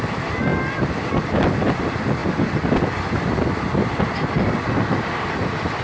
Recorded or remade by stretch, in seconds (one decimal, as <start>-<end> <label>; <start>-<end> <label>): 0.0-5.8 recorded